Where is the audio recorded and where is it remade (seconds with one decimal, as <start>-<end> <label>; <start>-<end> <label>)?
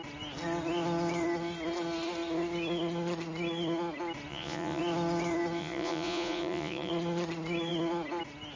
0.0-4.3 recorded; 4.3-4.8 remade; 4.8-5.6 recorded; 5.6-6.9 remade; 6.9-8.6 recorded